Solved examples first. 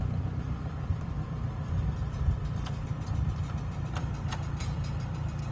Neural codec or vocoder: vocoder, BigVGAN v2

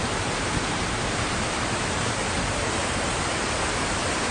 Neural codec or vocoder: vocoder, BigVGAN v2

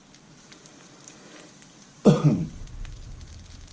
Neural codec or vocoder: vocoder, BigVGAN v2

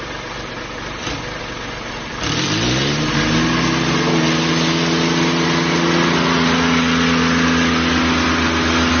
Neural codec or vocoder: none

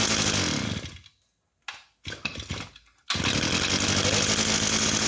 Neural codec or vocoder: none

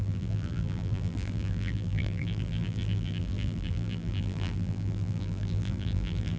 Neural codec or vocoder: vocoder, BigVGAN v2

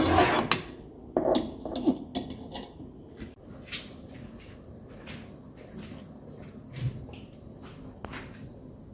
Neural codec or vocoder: none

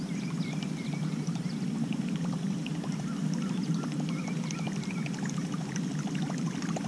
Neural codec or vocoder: vocoder, BigVGAN v2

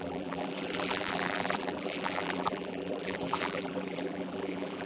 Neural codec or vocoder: vocoder, BigVGAN v2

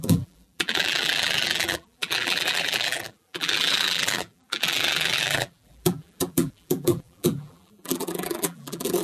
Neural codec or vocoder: vocoder, BigVGAN v2